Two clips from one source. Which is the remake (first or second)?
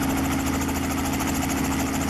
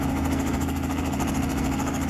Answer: second